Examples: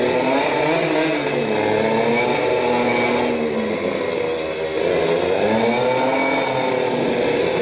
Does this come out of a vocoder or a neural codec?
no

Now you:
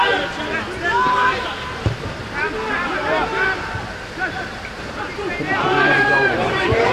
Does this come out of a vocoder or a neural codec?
yes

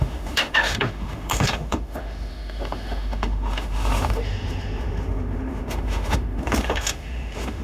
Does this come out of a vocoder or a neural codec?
yes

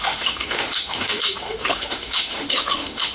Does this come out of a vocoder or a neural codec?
yes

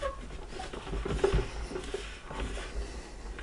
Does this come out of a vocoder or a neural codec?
no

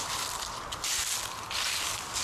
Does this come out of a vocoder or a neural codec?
no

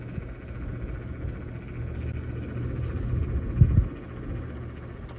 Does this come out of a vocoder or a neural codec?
no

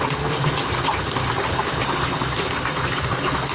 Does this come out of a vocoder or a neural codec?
no